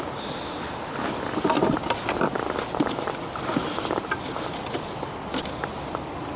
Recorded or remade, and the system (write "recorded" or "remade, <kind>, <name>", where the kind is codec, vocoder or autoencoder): recorded